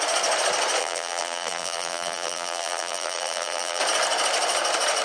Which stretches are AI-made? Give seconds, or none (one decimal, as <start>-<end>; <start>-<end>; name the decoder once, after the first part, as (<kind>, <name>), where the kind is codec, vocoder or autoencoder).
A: 0.8-3.8 (vocoder, BigVGAN v2)